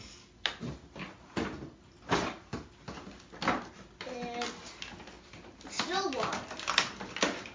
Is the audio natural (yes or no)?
yes